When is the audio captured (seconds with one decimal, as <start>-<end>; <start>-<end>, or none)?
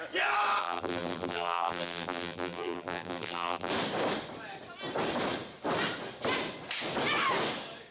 0.0-0.6; 3.7-7.9